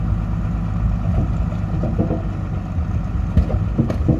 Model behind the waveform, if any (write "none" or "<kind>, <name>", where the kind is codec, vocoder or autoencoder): none